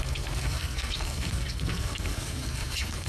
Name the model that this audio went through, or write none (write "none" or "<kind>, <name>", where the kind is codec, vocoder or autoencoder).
codec, SNAC